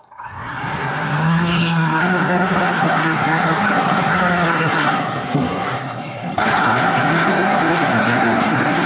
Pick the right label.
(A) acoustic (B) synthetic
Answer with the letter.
B